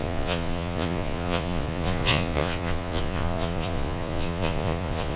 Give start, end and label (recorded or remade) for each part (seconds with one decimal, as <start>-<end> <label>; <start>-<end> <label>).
0.0-5.2 remade

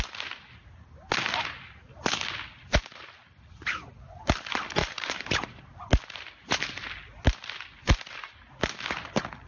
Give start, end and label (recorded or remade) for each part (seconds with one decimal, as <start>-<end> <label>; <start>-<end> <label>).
0.0-4.8 recorded; 4.8-5.6 remade; 5.6-9.5 recorded

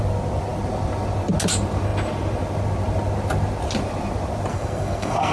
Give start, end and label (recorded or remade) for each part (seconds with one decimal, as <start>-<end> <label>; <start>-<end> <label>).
0.0-4.5 recorded; 4.5-5.3 remade

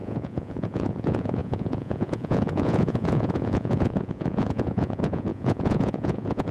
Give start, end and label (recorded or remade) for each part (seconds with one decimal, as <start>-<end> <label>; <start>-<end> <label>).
0.0-6.5 remade